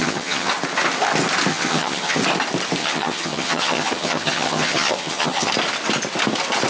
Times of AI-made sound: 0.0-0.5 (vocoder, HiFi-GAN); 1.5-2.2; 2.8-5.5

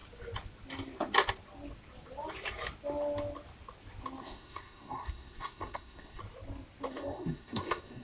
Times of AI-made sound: 4.2-6.2 (codec, SNAC); 6.9-8.0

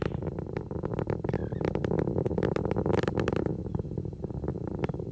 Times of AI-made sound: 0.0-5.1 (vocoder, BigVGAN v2)

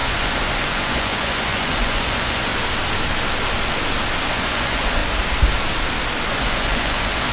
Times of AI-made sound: 0.0-2.5 (vocoder, Vocos); 4.3-5.0; 6.3-7.3

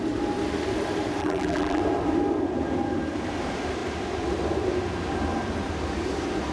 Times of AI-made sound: 1.2-1.8 (vocoder, BigVGAN v2)

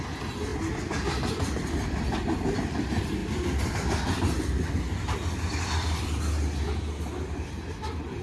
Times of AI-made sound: 0.5-2.5 (vocoder, BigVGAN v2); 3.2-6.2

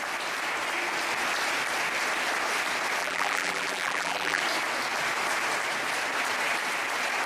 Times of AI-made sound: 3.0-4.4 (vocoder, BigVGAN v2)